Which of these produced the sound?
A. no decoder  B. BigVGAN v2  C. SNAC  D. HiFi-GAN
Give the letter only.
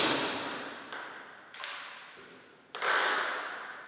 A